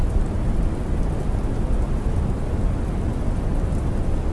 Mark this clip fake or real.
real